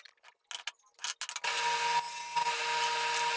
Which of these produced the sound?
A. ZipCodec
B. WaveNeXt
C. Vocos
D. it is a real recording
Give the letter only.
D